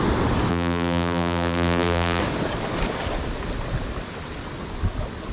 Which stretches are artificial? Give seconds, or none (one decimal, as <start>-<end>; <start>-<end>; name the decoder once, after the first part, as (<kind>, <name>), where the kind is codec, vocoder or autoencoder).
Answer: 0.5-2.2 (vocoder, BigVGAN v2)